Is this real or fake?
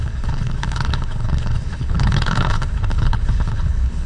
fake